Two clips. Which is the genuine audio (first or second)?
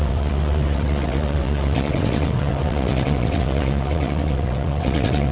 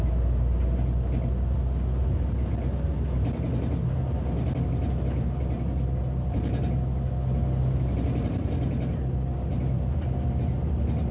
second